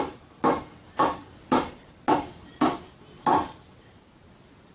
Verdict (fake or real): real